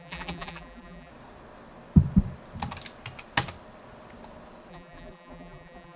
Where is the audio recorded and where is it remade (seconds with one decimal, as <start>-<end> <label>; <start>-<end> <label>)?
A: 0.0-1.1 remade; 1.1-4.7 recorded; 4.7-6.0 remade